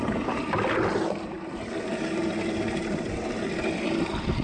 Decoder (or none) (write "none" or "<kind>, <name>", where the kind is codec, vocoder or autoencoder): none